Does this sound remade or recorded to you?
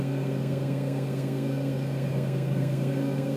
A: remade